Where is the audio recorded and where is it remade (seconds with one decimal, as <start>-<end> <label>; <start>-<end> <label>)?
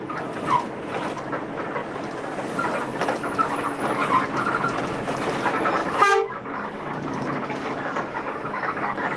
0.0-5.8 recorded; 5.8-9.2 remade